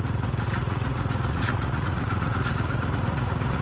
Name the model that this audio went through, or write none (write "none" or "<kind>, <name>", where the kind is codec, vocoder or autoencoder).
vocoder, Vocos